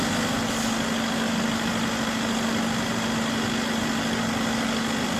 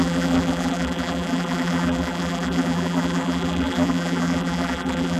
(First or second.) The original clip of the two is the first